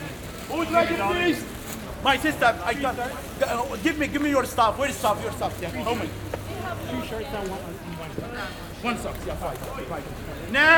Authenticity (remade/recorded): recorded